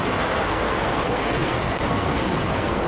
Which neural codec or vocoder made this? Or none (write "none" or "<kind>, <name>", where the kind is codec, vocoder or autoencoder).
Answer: codec, SNAC